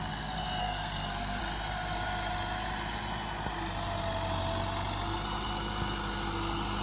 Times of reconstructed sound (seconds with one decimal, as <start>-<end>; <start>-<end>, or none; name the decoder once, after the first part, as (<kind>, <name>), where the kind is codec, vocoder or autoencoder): 0.6-1.4 (codec, SNAC)